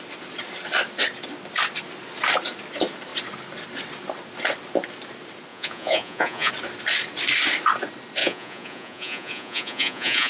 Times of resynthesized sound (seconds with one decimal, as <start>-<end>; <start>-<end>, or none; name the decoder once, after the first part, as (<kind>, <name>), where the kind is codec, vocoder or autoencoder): 5.5-6.5 (vocoder, Vocos); 8.2-10.3

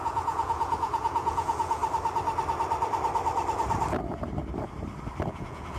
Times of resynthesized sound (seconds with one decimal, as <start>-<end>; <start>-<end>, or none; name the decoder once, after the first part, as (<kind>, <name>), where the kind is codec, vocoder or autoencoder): 0.0-1.8 (vocoder, Vocos); 5.3-5.8